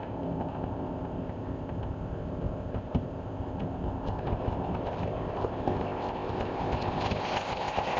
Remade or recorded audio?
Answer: remade